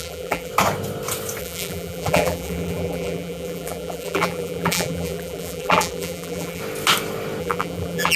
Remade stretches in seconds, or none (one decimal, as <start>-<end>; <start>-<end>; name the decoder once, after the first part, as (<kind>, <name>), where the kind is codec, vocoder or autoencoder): 0.0-0.5 (vocoder, BigVGAN v2); 1.4-6.6; 7.4-8.2